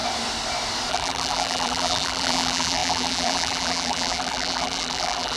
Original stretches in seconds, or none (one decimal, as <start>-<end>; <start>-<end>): 0.0-0.9